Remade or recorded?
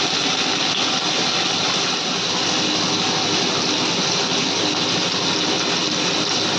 recorded